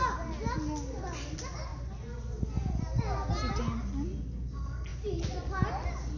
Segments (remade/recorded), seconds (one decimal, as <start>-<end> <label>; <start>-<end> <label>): 0.0-6.2 recorded